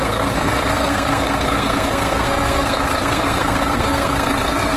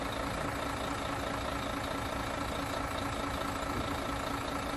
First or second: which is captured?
second